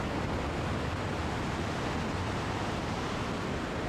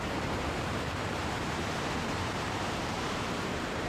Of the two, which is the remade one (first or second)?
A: second